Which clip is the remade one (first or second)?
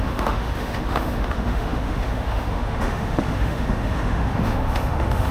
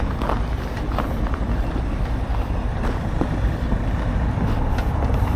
first